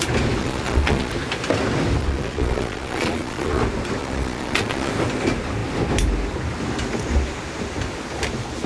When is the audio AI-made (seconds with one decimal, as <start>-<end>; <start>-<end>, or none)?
0.4-1.1; 2.0-3.6; 4.0-4.9